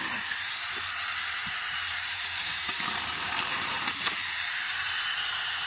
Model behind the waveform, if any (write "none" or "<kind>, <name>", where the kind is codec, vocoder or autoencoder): vocoder, BigVGAN v2